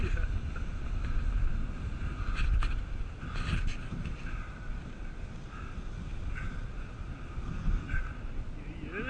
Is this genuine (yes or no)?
yes